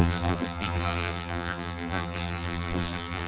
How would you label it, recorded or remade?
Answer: remade